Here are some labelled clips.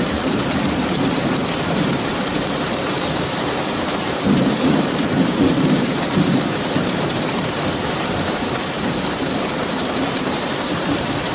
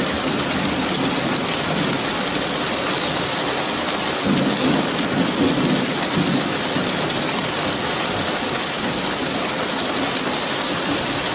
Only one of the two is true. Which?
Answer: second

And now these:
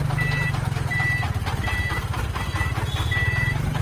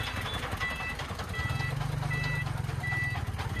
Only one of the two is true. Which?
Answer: second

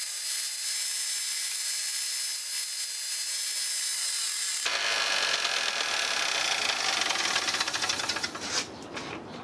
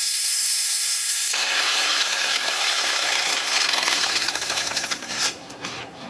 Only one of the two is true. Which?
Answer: first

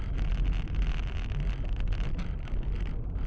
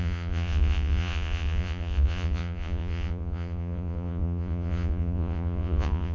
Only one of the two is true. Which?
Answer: first